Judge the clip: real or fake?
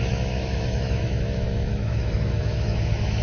fake